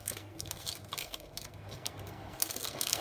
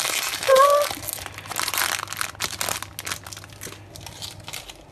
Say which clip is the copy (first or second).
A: first